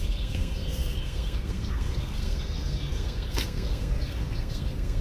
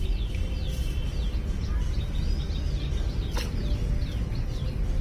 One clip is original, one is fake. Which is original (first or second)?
second